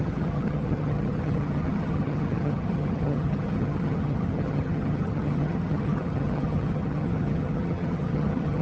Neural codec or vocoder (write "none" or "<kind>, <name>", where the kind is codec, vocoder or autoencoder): vocoder, HiFi-GAN